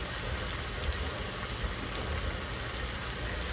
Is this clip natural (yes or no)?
yes